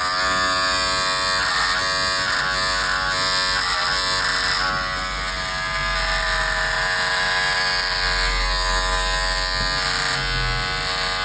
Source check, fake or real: real